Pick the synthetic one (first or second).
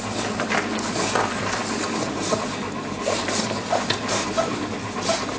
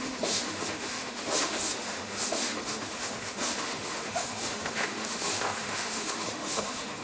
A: second